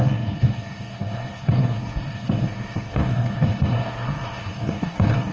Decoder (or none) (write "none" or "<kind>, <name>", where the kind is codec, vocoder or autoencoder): codec, SNAC